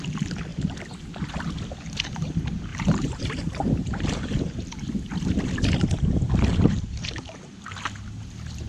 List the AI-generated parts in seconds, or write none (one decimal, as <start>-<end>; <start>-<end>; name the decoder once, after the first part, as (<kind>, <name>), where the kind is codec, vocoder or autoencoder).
2.7-4.9 (vocoder, BigVGAN v2); 6.5-7.7